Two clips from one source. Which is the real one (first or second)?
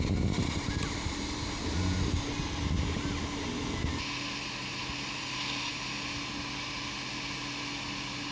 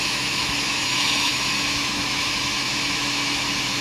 first